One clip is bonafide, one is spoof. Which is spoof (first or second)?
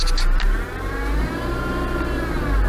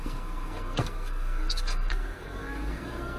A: second